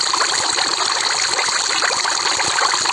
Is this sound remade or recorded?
recorded